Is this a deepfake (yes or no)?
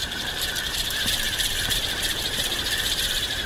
yes